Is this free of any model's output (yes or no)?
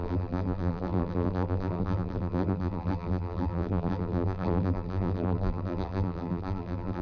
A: no